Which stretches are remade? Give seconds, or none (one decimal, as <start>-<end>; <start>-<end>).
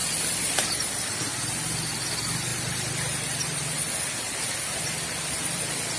2.5-3.8